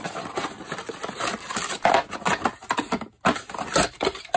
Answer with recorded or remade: recorded